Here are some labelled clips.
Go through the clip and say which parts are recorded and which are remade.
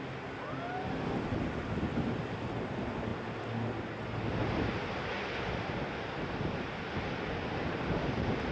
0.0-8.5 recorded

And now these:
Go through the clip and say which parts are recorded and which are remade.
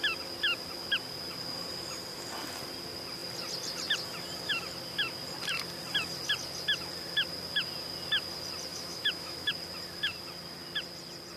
0.0-8.7 recorded; 8.7-9.5 remade; 9.5-11.4 recorded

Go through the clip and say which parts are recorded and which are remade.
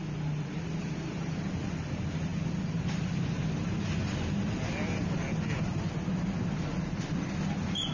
0.0-7.9 recorded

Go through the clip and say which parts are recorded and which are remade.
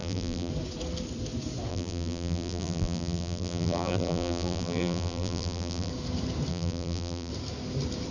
0.0-0.5 remade; 0.5-1.7 recorded; 1.7-5.9 remade; 5.9-6.5 recorded; 6.5-7.3 remade; 7.3-8.1 recorded